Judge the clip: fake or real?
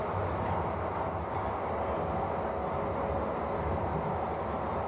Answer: real